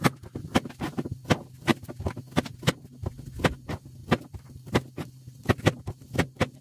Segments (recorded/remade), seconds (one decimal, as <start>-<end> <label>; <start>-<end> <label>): 0.0-1.7 recorded; 1.7-2.7 remade; 2.7-4.0 recorded; 4.0-6.6 remade